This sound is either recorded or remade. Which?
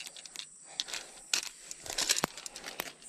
recorded